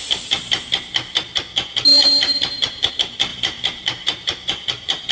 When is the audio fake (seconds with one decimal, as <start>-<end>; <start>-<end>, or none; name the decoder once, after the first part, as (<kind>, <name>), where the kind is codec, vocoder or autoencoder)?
3.3-5.1 (vocoder, BigVGAN v2)